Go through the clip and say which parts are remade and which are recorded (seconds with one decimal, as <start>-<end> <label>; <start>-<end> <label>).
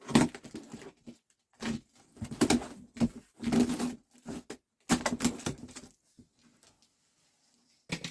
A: 0.0-8.1 recorded